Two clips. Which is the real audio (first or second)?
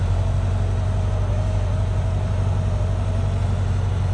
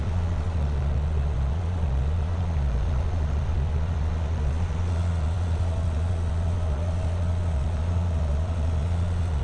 first